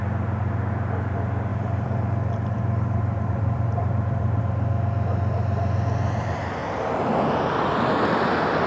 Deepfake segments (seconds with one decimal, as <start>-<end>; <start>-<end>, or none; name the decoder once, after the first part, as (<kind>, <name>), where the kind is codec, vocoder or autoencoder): 1.5-4.4 (vocoder, BigVGAN v2)